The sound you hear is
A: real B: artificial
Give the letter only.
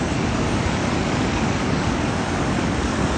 B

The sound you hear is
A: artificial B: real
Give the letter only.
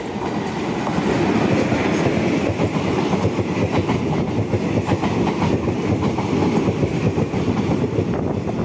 B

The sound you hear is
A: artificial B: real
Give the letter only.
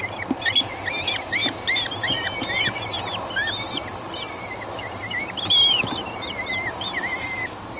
B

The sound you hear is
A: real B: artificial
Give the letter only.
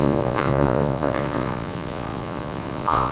B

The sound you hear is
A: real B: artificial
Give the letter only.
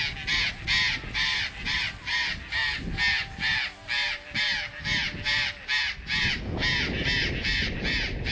A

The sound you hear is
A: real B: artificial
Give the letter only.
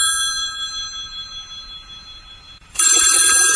B